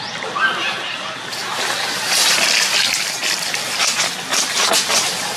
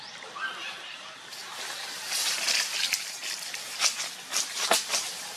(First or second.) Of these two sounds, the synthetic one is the second